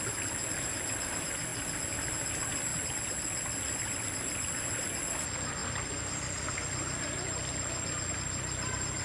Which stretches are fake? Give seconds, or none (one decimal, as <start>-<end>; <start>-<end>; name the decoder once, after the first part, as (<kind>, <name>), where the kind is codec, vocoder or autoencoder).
none